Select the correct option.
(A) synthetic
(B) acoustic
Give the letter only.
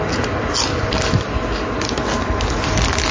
B